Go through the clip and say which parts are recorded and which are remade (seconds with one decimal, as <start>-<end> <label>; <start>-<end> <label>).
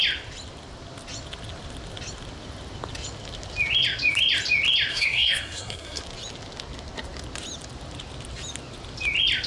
0.0-4.9 recorded; 4.9-6.0 remade; 6.0-9.5 recorded